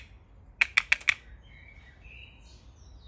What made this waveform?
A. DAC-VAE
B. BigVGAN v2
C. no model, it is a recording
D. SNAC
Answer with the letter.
C